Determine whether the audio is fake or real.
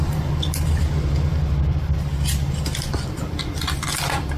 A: real